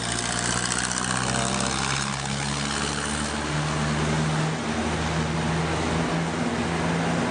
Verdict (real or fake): real